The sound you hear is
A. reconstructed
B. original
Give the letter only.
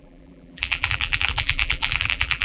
A